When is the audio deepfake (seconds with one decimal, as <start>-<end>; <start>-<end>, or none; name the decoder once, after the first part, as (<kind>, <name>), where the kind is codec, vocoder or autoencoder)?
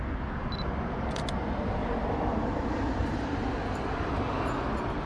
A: 1.8-4.1 (vocoder, BigVGAN v2)